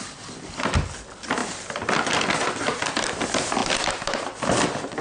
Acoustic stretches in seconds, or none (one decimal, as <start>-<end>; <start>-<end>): 0.0-5.0